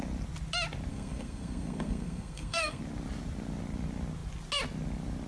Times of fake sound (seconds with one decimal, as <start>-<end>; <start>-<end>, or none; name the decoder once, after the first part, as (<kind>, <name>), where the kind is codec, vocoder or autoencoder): 0.9-2.8 (codec, SNAC)